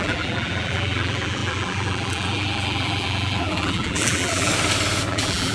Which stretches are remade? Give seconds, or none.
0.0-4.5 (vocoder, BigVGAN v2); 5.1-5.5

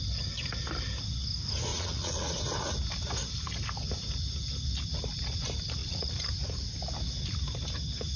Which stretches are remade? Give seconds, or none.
1.7-2.4 (vocoder, Vocos); 5.8-6.3

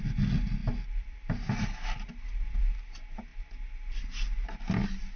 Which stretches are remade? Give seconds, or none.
none